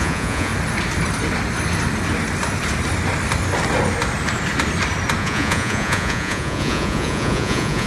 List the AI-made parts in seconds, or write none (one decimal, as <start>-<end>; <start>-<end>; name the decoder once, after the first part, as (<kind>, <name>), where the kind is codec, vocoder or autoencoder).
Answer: 0.0-0.5 (vocoder, Vocos); 5.2-7.9